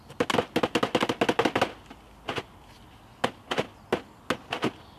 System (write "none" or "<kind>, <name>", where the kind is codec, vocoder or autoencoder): none